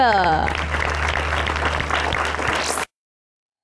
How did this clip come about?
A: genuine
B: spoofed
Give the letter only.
B